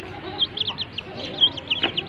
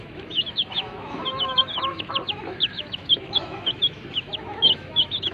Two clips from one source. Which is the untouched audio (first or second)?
first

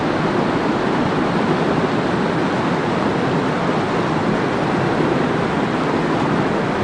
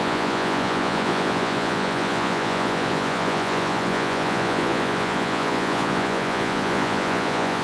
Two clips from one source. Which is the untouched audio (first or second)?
first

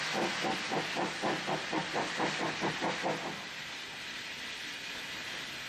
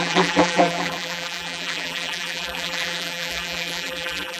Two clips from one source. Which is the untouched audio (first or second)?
first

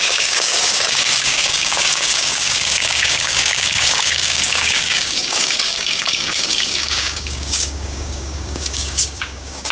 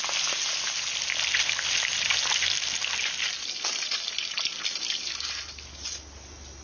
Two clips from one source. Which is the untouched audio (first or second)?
second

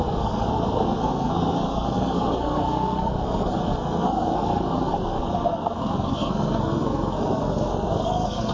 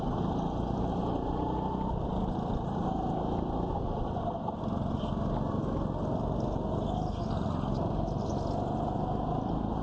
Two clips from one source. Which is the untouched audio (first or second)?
second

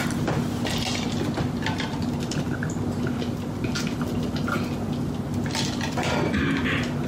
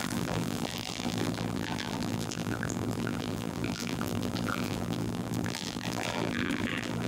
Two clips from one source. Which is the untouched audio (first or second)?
first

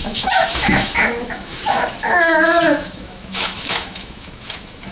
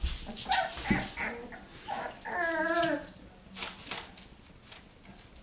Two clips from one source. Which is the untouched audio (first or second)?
second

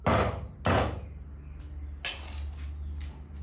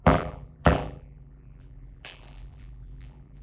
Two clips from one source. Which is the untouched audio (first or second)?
first